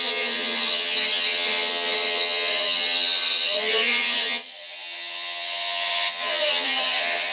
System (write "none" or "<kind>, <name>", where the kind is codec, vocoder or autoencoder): vocoder, HiFi-GAN